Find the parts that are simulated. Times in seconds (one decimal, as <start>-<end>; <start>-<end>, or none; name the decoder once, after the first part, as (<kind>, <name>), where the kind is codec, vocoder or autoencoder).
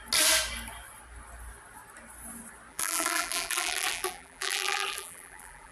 2.7-5.7 (vocoder, BigVGAN v2)